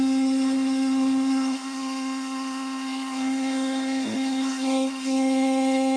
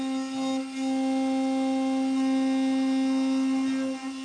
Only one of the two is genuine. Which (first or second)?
second